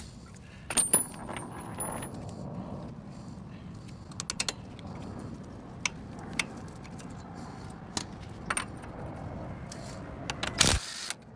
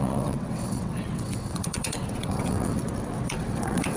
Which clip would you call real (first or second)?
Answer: first